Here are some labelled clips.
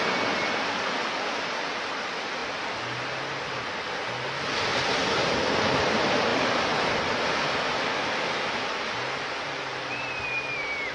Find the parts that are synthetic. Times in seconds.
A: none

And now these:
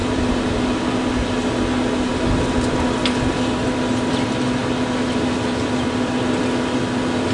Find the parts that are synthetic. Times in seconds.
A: 0.0-1.0 (vocoder, BigVGAN v2)

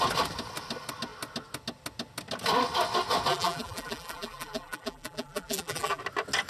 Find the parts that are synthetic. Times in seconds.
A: 3.3-6.0 (vocoder, BigVGAN v2)

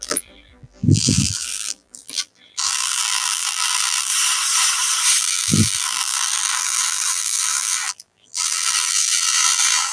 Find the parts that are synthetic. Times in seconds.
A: 0.0-4.1 (vocoder, BigVGAN v2); 5.2-9.9

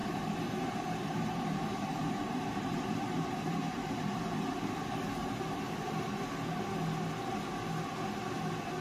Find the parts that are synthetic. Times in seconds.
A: 0.0-4.5 (vocoder, BigVGAN v2); 5.2-6.3